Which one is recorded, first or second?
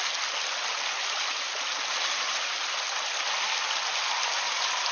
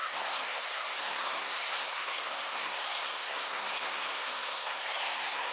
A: first